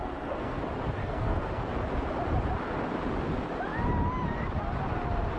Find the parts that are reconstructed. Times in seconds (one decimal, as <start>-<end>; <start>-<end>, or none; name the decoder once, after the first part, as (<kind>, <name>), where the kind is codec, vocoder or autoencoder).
0.0-0.6 (codec, SNAC); 1.0-1.6